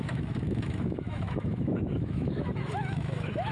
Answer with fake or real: fake